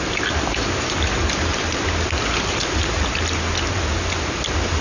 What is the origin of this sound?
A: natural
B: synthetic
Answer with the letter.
A